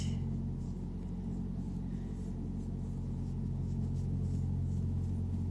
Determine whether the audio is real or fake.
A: real